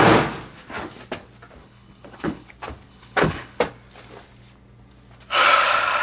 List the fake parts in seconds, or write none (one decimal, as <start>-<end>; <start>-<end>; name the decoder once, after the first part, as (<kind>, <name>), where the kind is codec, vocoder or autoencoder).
1.6-2.5 (codec, HILCodec); 2.9-3.6